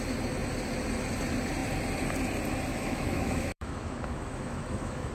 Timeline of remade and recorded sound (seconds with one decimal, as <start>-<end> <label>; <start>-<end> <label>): 0.0-2.7 recorded; 2.7-5.1 remade